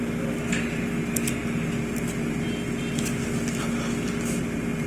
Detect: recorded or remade recorded